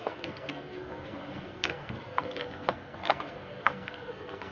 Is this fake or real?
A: fake